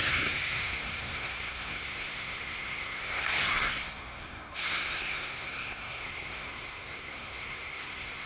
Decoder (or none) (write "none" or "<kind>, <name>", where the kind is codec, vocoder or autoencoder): codec, SNAC